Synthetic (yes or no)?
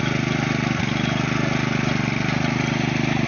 no